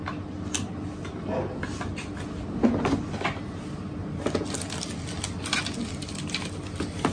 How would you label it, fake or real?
real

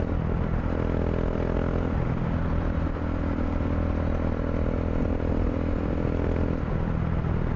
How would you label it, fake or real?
real